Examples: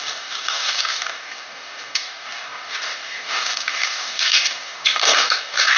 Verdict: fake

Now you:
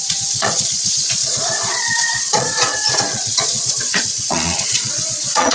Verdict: fake